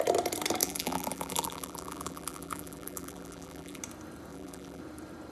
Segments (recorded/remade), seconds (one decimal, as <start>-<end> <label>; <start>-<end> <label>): 0.0-0.6 recorded; 0.6-3.8 remade; 3.8-4.3 recorded; 4.3-4.8 remade; 4.8-5.3 recorded